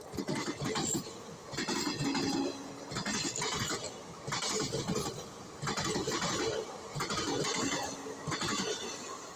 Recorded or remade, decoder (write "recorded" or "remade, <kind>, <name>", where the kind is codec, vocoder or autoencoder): recorded